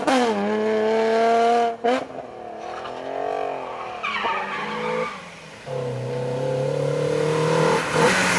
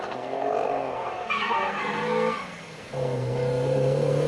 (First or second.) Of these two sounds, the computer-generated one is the second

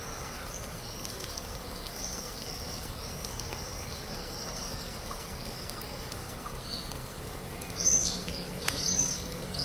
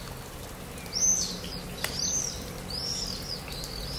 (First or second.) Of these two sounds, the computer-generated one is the first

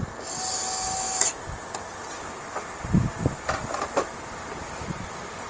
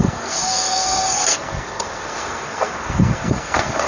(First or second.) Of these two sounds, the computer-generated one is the second